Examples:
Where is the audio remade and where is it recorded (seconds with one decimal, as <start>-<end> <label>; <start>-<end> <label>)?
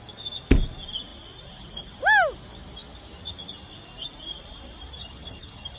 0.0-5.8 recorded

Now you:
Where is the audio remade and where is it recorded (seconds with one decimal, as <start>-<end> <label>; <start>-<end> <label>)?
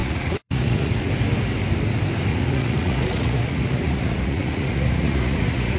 0.0-1.1 remade; 1.1-2.3 recorded; 2.3-5.8 remade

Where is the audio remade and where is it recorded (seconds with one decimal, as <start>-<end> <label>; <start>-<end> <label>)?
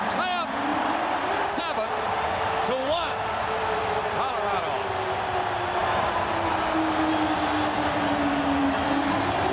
0.0-2.8 recorded; 2.8-3.3 remade; 3.3-9.5 recorded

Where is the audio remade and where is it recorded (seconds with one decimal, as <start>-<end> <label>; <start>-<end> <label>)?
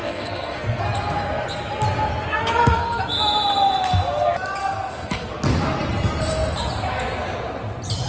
0.0-0.8 remade; 0.8-2.3 recorded; 2.3-3.0 remade; 3.0-4.6 recorded; 4.6-5.3 remade; 5.3-8.1 recorded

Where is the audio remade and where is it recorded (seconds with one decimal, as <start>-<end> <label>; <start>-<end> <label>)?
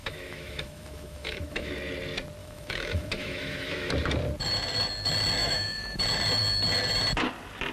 0.0-1.7 remade; 1.7-2.4 recorded; 2.4-3.9 remade; 3.9-5.4 recorded; 5.4-6.0 remade; 6.0-7.7 recorded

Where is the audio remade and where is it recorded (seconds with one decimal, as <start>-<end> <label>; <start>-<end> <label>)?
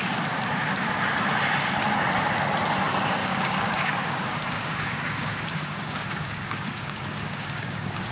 0.0-3.2 recorded; 3.2-8.1 remade